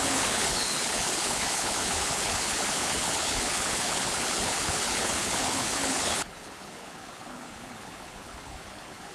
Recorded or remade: remade